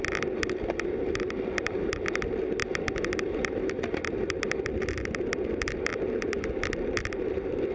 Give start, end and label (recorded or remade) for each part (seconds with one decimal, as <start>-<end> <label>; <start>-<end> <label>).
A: 0.0-2.6 remade; 2.6-3.7 recorded; 3.7-7.7 remade